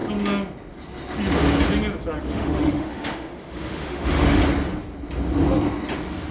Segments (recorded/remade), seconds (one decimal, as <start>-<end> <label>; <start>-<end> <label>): 0.0-2.2 recorded; 2.2-4.4 remade; 4.4-6.3 recorded